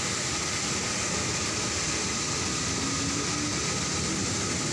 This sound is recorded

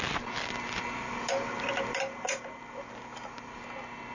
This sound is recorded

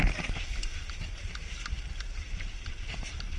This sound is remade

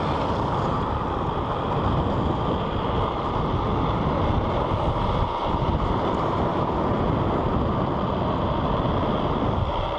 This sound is recorded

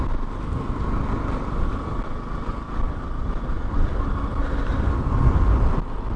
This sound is recorded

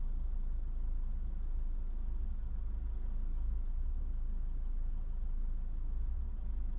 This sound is recorded